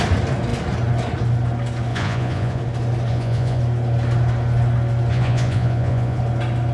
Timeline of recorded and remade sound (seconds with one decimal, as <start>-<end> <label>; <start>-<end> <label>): 0.0-1.9 recorded; 1.9-2.6 remade; 2.6-3.1 recorded; 3.1-3.6 remade; 3.6-5.1 recorded; 5.1-6.2 remade; 6.2-6.7 recorded